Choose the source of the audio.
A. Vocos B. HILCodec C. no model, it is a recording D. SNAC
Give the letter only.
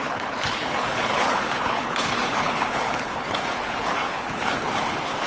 B